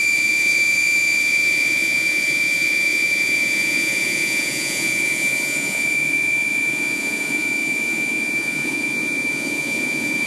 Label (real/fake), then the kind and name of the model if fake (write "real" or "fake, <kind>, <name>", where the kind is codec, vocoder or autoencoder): fake, vocoder, Vocos